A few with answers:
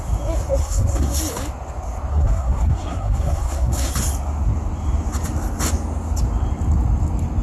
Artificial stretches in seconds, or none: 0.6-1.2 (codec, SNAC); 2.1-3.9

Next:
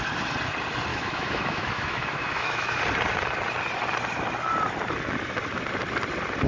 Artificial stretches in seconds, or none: 0.9-2.8 (autoencoder, DAC-VAE)

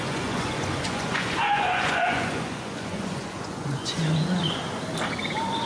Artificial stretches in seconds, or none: 0.0-4.6 (vocoder, Vocos); 5.3-5.7

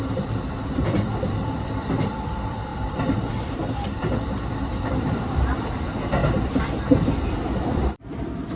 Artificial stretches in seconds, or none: 0.0-6.2 (vocoder, BigVGAN v2); 7.6-8.6